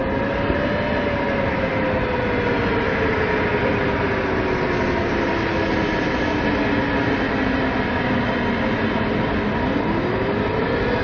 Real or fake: real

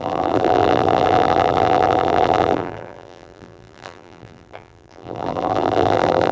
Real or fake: fake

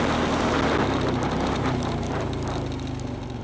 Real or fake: real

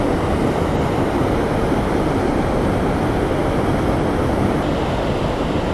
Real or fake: real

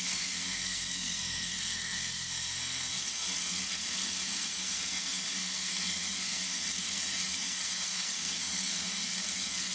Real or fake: fake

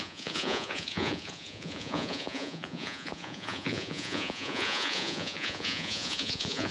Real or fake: fake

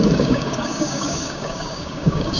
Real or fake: fake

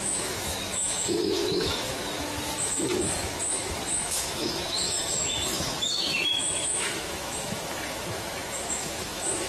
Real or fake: fake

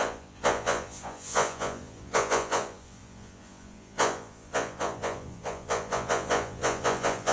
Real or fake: fake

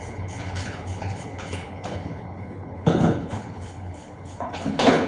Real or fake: fake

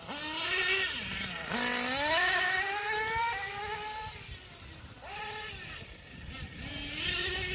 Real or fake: real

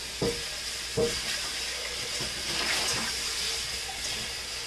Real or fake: real